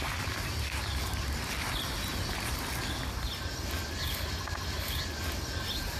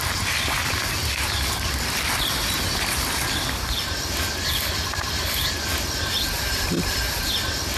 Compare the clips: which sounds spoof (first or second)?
second